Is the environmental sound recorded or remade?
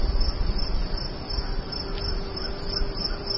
recorded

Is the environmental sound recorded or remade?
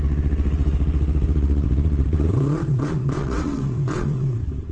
remade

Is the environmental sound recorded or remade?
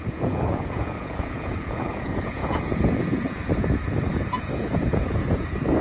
remade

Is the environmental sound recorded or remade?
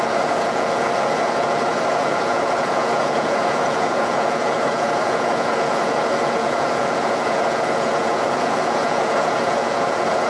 remade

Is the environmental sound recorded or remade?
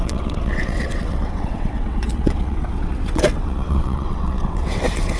remade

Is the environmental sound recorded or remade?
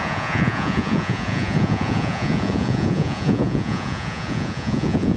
remade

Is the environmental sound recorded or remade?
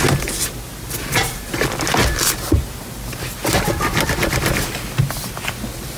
recorded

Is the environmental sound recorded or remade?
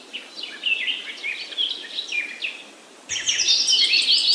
recorded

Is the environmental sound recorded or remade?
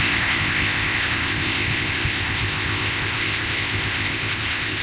remade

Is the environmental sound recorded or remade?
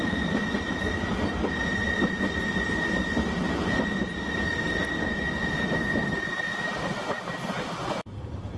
recorded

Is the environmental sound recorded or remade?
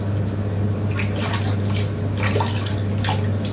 recorded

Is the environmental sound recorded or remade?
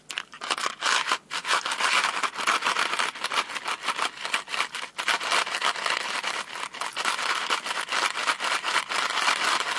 recorded